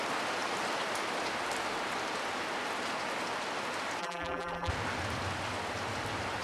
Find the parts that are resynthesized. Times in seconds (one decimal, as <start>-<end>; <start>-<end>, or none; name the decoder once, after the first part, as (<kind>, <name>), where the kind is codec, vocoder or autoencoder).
4.0-4.7 (vocoder, BigVGAN v2)